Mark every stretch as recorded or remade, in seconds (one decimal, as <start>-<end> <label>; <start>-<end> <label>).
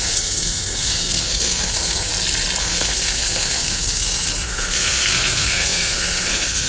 0.0-2.1 remade; 2.1-2.6 recorded; 2.6-6.7 remade